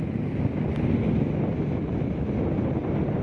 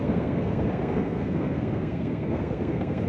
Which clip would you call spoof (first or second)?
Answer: second